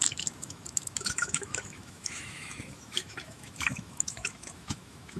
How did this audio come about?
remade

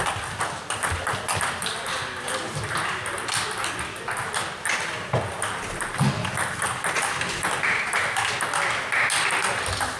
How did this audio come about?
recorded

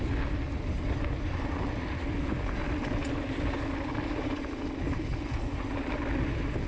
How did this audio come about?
recorded